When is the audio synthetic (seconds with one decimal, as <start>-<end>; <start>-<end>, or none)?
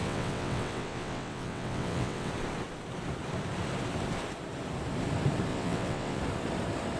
0.0-2.3; 5.5-6.2